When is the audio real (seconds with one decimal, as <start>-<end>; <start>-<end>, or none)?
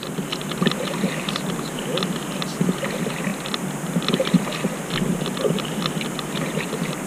0.0-7.1